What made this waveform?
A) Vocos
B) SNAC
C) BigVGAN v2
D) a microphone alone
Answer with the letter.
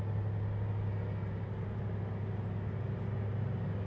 D